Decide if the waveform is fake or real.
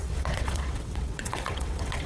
fake